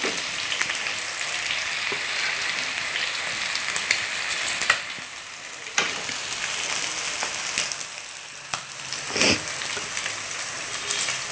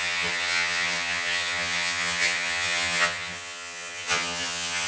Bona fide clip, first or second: first